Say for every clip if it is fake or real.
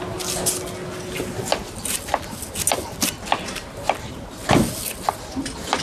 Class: real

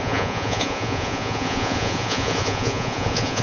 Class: fake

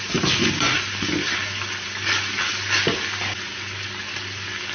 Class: real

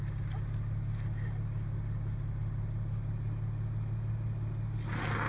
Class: real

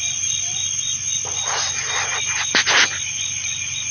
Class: real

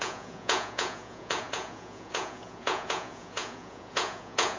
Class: fake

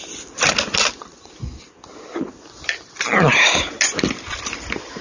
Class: real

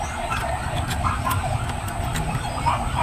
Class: real